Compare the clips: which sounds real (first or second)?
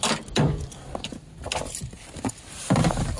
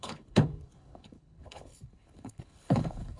first